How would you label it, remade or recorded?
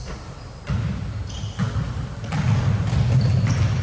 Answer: recorded